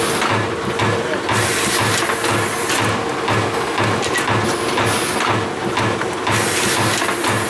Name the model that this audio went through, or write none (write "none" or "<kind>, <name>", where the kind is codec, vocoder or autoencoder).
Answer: none